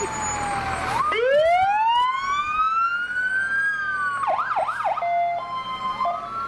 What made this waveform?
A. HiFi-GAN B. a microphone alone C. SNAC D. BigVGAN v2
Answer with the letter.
B